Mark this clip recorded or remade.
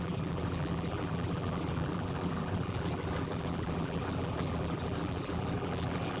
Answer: remade